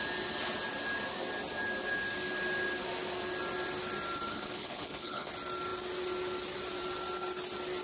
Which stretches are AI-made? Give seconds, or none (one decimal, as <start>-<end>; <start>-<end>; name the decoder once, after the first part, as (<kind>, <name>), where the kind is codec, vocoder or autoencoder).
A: 4.3-5.3 (codec, HILCodec)